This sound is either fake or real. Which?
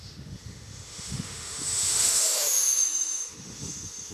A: fake